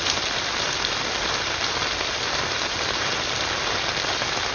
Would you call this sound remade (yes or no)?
yes